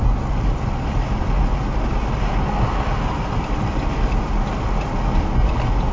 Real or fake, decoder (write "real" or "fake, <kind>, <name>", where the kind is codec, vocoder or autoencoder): real